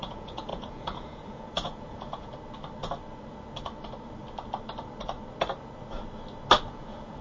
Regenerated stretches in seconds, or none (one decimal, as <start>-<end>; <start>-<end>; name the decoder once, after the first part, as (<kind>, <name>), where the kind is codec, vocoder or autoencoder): 0.0-2.3 (vocoder, Vocos); 6.6-7.2